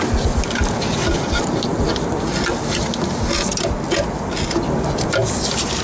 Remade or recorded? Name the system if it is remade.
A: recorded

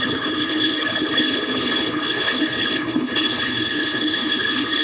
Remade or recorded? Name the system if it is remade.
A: remade, codec, HILCodec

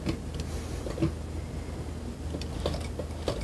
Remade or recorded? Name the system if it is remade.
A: recorded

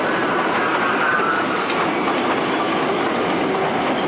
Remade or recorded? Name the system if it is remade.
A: recorded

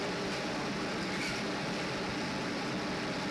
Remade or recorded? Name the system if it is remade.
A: recorded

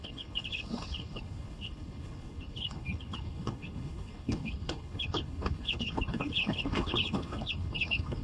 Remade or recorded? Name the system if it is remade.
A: remade, codec, HILCodec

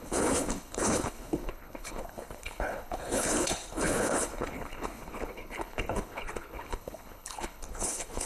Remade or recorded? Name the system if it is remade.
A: remade, codec, HILCodec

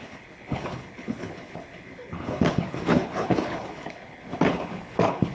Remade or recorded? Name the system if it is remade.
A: remade, codec, HILCodec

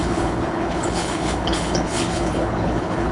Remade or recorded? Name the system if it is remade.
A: remade, codec, HILCodec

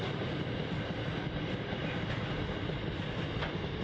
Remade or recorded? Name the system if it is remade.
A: recorded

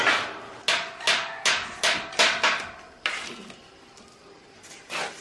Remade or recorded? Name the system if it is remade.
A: recorded